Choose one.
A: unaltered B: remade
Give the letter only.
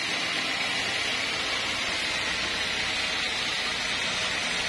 A